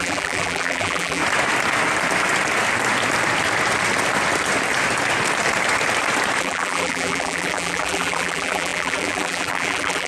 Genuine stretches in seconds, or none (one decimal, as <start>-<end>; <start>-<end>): 1.2-6.4